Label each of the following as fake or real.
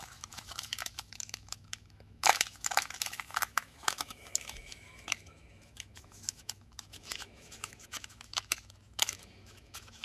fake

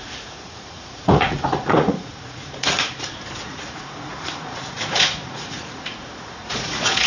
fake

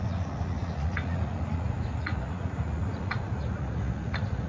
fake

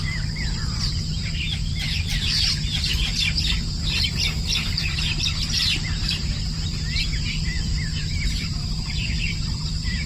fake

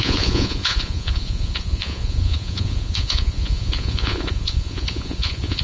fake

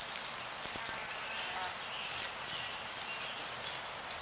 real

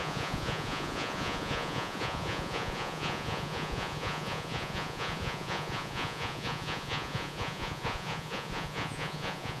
fake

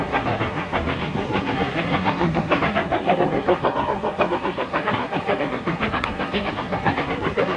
fake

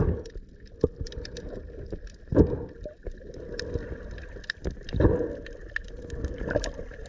real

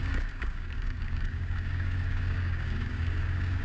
fake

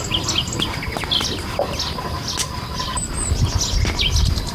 real